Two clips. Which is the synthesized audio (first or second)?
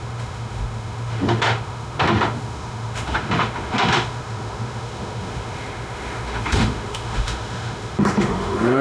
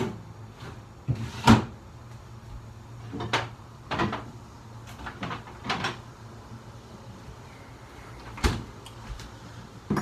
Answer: first